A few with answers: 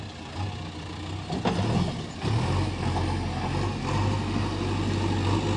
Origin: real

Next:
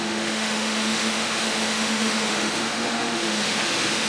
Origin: fake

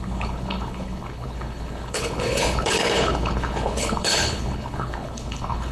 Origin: fake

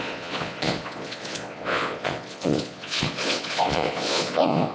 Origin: fake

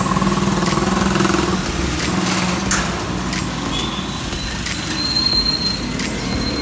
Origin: real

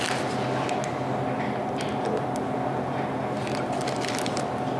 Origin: real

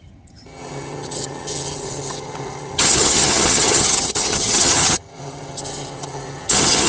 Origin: fake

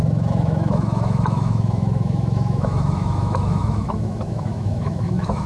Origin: fake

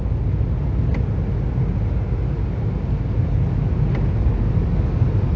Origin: real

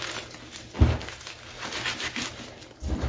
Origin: real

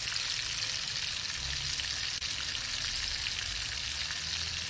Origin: real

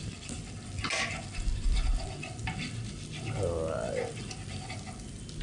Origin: real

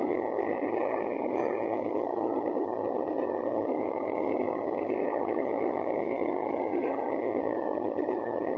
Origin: fake